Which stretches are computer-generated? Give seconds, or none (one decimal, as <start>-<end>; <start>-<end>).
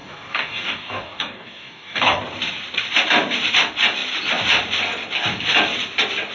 0.0-2.2